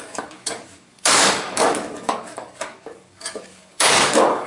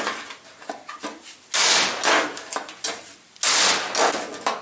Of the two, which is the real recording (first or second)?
second